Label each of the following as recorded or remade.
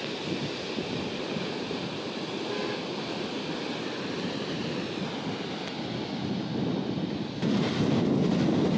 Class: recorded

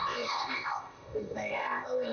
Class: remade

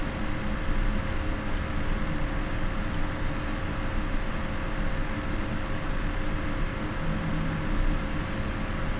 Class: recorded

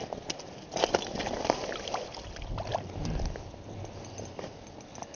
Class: recorded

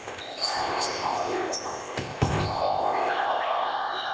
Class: remade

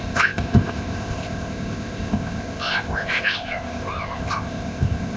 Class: remade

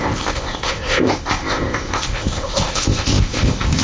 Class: remade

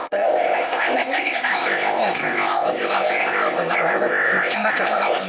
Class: remade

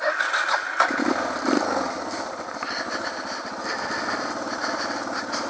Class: recorded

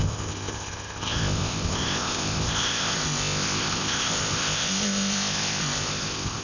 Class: remade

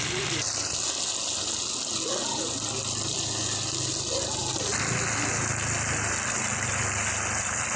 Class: recorded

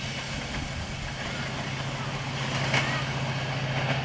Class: recorded